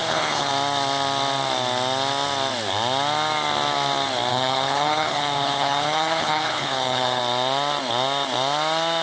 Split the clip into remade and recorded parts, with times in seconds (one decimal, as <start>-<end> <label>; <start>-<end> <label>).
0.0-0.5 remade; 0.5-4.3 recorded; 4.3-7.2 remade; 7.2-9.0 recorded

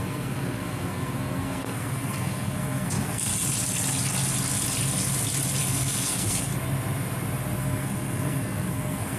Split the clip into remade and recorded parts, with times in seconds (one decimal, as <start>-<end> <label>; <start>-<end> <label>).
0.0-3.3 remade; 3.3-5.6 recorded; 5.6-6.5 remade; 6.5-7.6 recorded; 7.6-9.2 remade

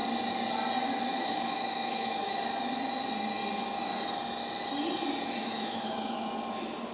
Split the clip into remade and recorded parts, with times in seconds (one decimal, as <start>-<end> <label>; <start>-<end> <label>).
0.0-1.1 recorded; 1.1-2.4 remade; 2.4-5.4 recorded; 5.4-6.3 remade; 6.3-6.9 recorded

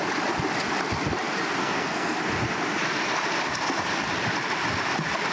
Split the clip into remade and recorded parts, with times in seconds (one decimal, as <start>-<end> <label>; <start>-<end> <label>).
0.0-1.6 recorded; 1.6-2.2 remade; 2.2-5.3 recorded

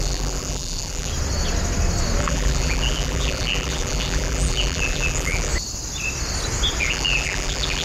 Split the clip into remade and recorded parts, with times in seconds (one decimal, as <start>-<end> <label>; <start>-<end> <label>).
0.0-1.1 remade; 1.1-2.2 recorded; 2.2-5.5 remade; 5.5-6.8 recorded; 6.8-7.8 remade

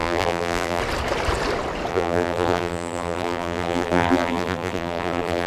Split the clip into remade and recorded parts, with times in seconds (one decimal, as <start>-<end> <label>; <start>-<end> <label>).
0.0-0.8 remade; 0.8-1.9 recorded; 1.9-5.5 remade

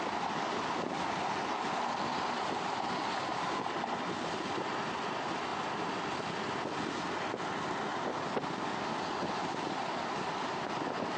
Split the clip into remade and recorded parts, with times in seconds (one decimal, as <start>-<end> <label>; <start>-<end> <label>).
0.0-11.2 recorded